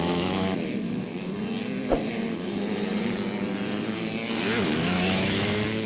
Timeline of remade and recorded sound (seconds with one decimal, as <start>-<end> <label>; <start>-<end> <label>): 0.0-1.1 remade; 1.1-4.6 recorded; 4.6-5.9 remade